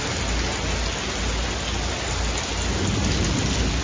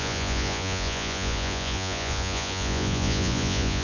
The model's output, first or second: second